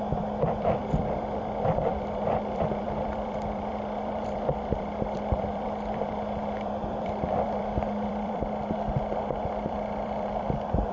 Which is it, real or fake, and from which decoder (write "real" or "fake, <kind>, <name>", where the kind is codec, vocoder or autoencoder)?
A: fake, vocoder, BigVGAN v2